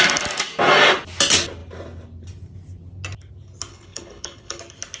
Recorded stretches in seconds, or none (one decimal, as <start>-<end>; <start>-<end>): 0.0-3.7; 4.6-5.0